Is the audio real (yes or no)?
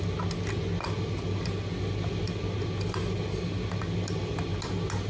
yes